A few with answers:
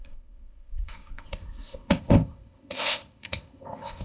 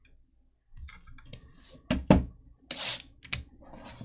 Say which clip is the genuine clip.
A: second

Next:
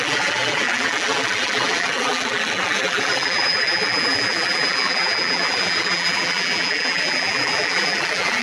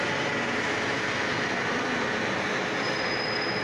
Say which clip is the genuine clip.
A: second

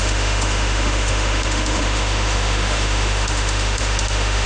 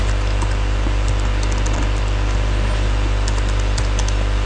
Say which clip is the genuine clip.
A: second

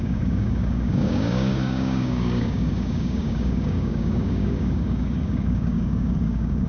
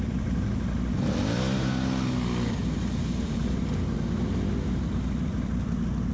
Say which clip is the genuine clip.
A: second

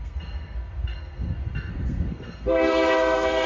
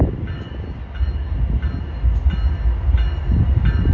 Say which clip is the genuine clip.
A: second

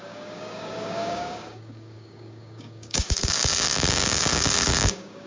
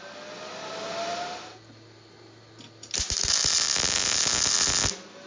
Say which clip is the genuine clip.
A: second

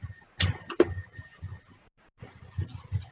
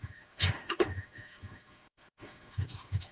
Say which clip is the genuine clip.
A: first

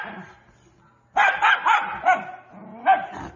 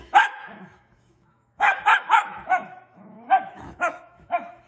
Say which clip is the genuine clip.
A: first